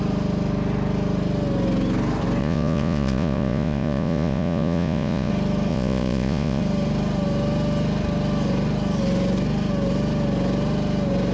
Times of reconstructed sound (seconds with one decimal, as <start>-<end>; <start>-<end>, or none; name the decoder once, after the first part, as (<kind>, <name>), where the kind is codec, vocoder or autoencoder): 2.4-5.3 (vocoder, Vocos); 5.7-6.6